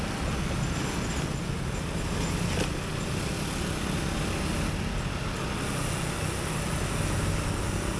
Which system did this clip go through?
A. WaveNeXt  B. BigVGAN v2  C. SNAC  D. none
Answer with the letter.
D